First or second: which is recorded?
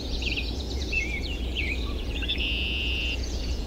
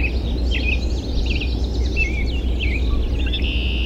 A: second